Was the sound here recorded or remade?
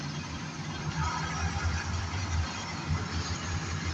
recorded